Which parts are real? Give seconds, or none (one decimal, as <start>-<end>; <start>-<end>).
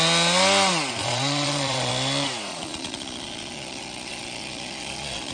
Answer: 0.0-1.0; 1.9-2.5